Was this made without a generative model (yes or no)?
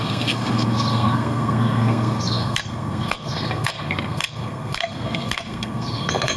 no